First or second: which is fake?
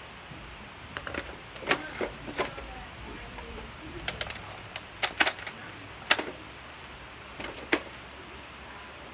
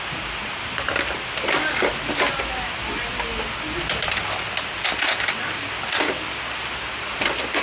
first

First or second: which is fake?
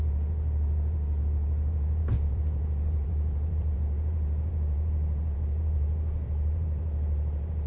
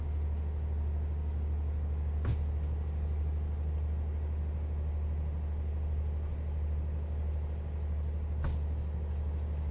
first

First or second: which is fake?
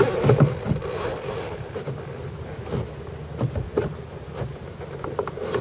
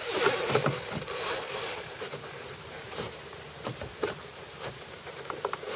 second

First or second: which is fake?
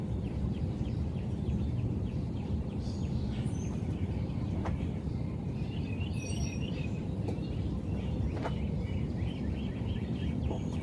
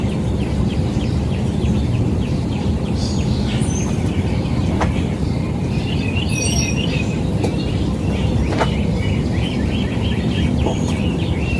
first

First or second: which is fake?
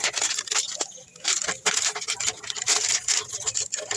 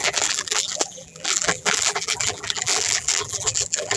second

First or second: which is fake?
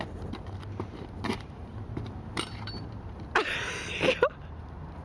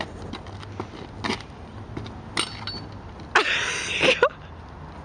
first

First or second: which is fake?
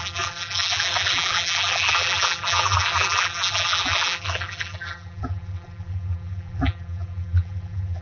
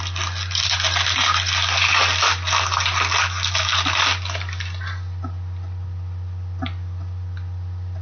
first